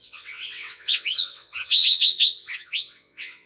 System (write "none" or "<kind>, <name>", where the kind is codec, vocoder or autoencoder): vocoder, WaveNeXt